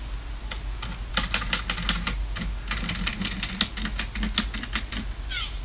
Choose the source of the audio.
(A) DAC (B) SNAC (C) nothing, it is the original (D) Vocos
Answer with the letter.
C